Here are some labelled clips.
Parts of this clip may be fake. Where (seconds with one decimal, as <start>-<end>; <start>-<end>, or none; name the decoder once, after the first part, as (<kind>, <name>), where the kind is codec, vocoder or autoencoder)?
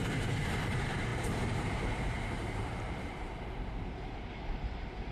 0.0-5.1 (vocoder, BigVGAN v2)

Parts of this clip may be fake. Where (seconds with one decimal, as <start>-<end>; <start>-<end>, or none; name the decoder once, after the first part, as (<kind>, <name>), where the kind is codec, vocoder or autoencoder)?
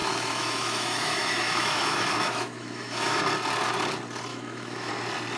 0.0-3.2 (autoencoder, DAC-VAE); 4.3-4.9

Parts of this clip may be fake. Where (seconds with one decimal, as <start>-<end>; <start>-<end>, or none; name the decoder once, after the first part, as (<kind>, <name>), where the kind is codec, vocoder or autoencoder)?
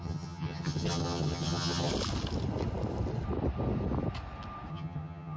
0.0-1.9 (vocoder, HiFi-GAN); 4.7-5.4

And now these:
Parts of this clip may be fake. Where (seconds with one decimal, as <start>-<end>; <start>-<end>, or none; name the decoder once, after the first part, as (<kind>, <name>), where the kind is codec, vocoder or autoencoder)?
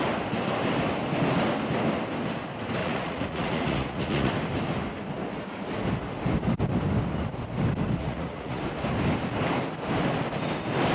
2.8-4.3 (vocoder, Vocos); 8.0-8.6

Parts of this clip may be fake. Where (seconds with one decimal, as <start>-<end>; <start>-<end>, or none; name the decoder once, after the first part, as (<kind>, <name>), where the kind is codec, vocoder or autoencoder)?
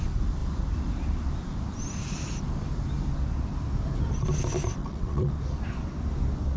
4.8-5.3 (vocoder, WaveNeXt)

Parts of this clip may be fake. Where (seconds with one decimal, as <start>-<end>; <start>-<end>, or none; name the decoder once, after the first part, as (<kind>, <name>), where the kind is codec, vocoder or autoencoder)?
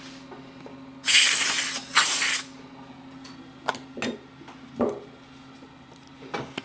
none